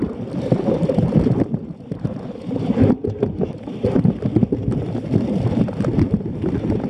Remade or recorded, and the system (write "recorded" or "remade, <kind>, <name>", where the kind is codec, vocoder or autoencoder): recorded